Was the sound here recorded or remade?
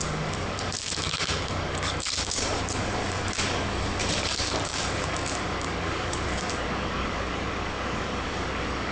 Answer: remade